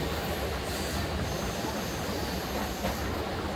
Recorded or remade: recorded